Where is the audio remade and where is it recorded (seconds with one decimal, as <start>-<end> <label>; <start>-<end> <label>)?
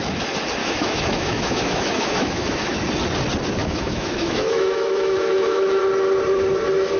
0.0-0.6 recorded; 0.6-2.8 remade; 2.8-3.6 recorded; 3.6-5.8 remade; 5.8-7.0 recorded